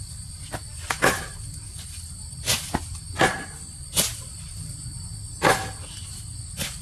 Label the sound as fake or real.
real